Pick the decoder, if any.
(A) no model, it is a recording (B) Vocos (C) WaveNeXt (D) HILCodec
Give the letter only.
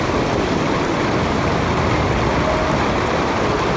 A